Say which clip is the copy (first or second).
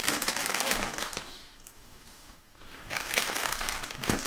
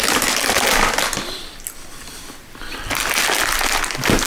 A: first